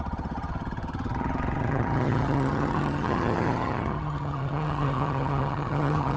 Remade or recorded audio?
remade